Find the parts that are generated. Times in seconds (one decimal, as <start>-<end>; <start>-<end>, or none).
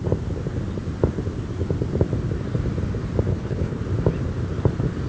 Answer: 3.3-3.8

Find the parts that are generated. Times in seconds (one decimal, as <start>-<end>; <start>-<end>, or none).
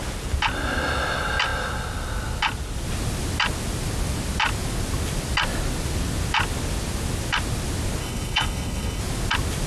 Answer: 8.0-9.0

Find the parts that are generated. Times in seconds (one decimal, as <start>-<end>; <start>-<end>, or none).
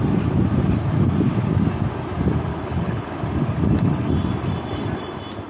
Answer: 2.5-3.1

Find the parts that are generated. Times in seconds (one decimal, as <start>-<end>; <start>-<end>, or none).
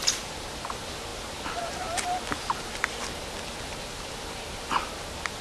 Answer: none